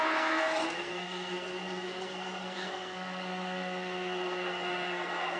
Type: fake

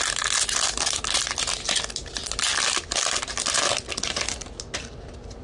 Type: real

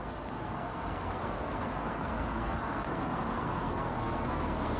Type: fake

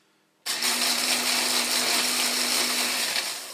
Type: real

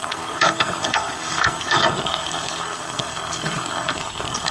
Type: fake